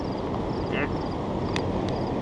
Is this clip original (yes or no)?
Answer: yes